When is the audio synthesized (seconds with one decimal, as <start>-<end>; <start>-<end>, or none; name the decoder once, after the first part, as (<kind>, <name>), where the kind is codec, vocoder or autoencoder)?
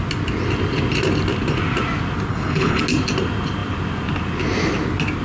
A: 2.3-2.8 (codec, HILCodec)